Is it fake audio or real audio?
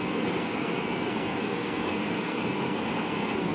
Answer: fake